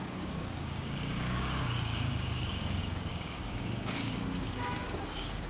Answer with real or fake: fake